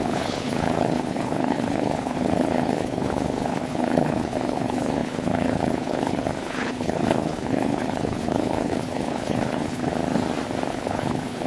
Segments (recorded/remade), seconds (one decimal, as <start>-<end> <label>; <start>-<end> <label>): 0.0-9.9 remade; 9.9-10.7 recorded; 10.7-11.5 remade